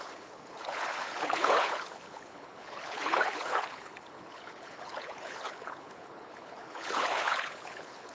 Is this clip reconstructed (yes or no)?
yes